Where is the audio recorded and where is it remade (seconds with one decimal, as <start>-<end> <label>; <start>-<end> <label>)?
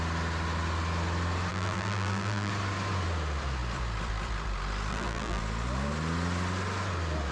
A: 0.0-1.5 recorded; 1.5-2.5 remade; 2.5-4.9 recorded; 4.9-5.4 remade; 5.4-7.3 recorded